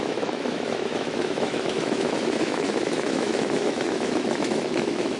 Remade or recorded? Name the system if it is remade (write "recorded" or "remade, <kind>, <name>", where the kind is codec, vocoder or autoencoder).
remade, autoencoder, DAC-VAE